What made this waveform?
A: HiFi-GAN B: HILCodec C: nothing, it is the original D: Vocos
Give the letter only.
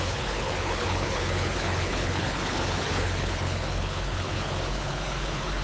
B